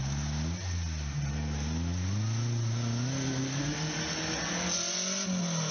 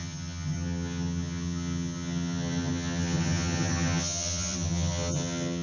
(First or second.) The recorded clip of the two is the first